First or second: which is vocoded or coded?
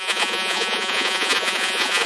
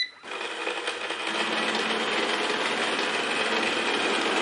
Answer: first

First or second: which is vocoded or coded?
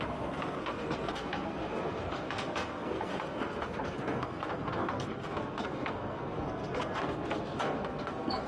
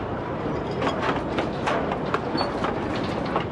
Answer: first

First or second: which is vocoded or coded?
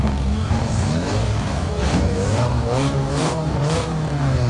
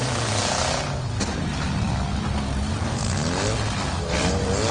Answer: first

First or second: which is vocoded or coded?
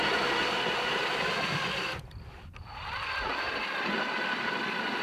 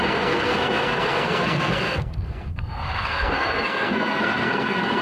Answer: second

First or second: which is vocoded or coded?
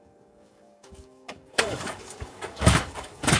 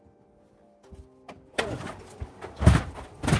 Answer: first